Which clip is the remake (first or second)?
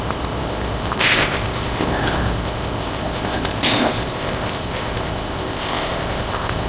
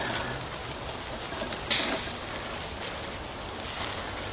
first